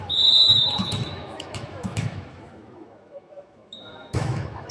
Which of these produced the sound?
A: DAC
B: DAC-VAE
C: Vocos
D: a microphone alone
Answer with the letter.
B